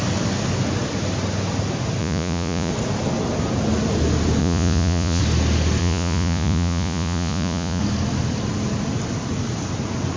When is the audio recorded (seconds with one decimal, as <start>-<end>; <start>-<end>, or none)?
0.0-2.0; 2.7-4.4; 5.2-5.8; 7.8-10.2